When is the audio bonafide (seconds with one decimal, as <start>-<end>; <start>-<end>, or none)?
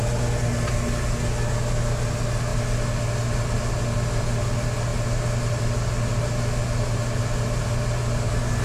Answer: 0.0-8.6